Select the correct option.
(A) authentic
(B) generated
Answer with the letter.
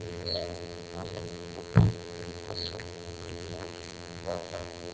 B